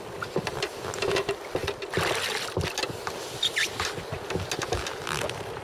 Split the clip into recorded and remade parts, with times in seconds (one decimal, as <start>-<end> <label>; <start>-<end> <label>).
0.0-5.6 recorded